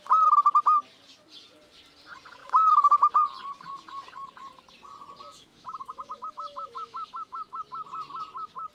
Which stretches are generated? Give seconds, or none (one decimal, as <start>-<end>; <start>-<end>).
2.4-3.1; 5.3-7.6